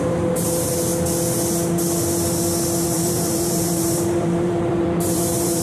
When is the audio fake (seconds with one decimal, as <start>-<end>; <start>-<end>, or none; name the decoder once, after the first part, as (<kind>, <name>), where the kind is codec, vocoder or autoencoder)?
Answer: 0.0-0.9 (vocoder, BigVGAN v2); 2.8-5.6